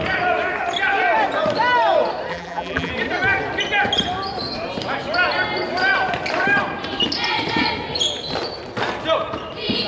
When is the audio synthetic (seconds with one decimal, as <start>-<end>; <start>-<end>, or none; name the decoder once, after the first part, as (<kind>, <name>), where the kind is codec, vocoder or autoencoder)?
2.3-2.9 (vocoder, BigVGAN v2)